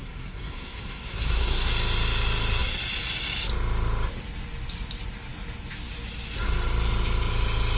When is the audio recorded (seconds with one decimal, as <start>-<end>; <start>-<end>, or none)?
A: 1.7-7.8